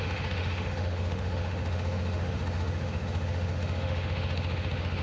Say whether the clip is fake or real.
fake